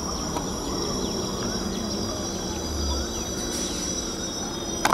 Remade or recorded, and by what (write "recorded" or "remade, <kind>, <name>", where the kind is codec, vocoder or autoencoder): recorded